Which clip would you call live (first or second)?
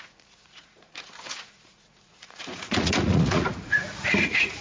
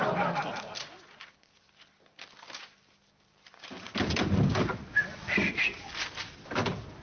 second